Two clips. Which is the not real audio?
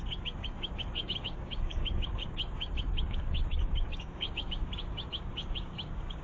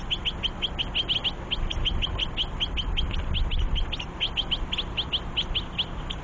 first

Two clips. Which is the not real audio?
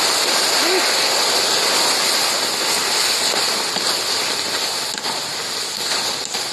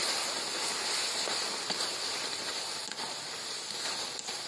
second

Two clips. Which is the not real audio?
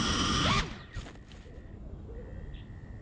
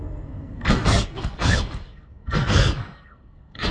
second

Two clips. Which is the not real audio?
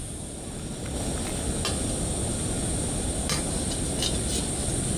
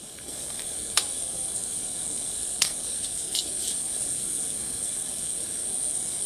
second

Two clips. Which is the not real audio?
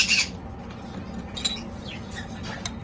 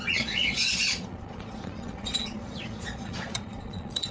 second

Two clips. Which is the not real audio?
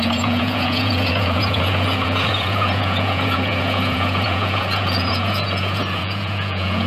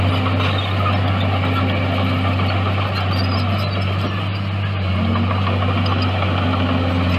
first